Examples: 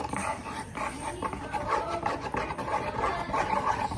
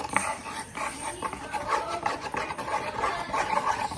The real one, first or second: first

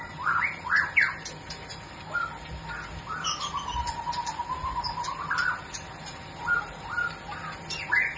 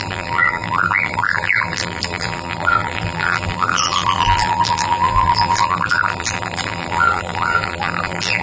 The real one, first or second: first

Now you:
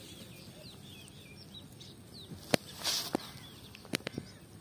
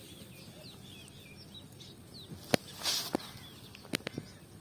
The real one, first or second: second